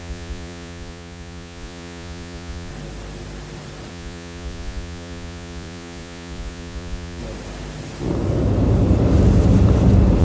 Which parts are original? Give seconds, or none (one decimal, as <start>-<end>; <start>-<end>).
2.7-3.9; 7.2-10.2